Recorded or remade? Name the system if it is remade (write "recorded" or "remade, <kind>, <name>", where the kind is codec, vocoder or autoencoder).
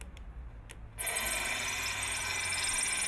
recorded